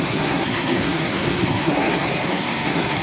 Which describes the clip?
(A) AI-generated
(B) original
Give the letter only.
A